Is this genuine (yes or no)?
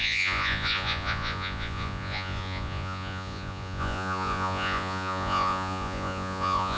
no